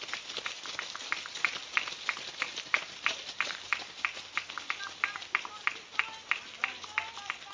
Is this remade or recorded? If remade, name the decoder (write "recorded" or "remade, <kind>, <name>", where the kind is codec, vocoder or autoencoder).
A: recorded